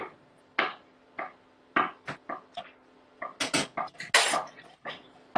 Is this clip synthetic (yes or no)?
no